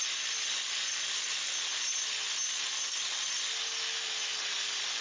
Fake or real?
real